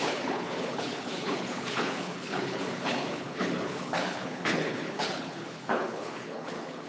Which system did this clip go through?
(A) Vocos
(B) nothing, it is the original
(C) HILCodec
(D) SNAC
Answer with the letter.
C